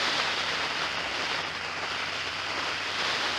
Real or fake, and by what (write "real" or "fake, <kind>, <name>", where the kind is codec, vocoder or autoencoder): real